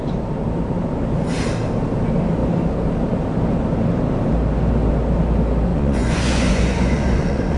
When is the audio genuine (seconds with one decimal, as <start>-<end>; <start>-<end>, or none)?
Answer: 0.0-5.7